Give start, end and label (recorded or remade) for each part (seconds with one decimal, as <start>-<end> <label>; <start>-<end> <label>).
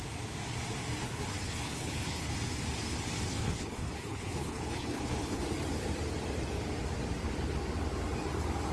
0.0-1.0 recorded; 1.0-2.3 remade; 2.3-3.3 recorded; 3.3-5.4 remade; 5.4-8.7 recorded